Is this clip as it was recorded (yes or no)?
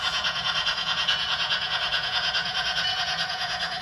no